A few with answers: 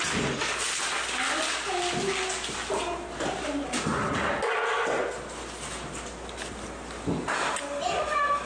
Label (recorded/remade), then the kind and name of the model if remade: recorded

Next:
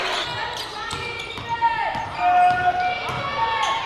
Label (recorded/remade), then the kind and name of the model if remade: recorded